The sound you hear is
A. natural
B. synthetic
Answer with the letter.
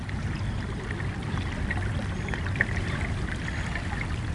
A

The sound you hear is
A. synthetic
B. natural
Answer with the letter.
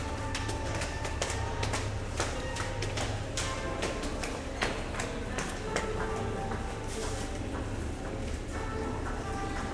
B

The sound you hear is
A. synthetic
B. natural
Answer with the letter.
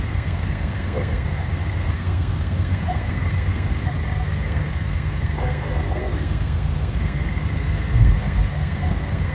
A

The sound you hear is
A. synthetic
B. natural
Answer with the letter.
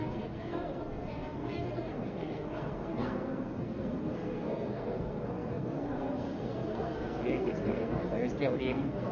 A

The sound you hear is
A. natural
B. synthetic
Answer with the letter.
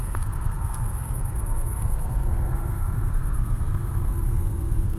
B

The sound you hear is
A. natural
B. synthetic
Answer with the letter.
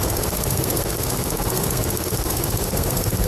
B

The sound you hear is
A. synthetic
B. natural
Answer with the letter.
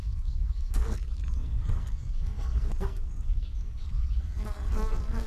A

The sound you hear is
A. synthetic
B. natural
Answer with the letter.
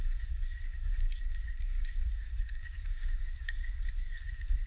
A